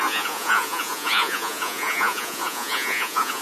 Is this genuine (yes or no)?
no